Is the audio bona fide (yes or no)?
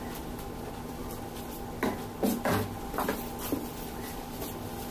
yes